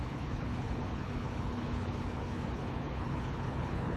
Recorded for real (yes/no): no